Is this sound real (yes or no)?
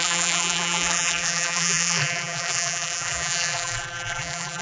no